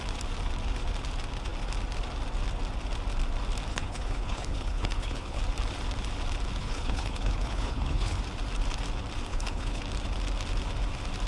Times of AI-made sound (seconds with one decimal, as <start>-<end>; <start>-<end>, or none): 3.7-5.4; 6.6-8.2; 9.3-9.8

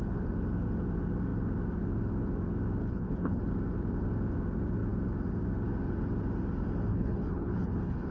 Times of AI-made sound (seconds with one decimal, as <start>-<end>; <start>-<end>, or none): 2.8-3.4; 6.9-8.1

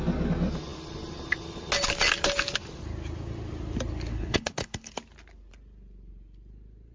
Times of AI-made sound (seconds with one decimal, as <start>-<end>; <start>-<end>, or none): 4.1-4.9